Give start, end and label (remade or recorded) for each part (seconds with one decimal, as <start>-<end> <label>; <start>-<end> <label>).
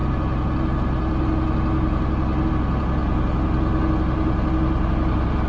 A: 0.0-5.5 recorded